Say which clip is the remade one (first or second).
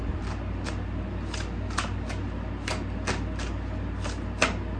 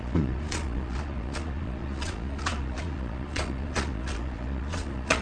second